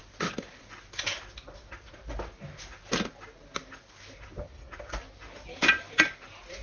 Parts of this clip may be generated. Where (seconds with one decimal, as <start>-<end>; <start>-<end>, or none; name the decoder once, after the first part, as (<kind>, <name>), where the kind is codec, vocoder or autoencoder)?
none